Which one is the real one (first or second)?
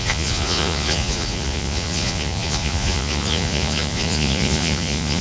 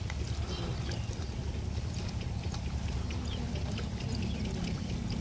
second